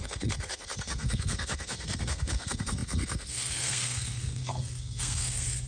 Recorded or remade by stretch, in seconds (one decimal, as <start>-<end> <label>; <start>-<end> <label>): 0.0-5.7 remade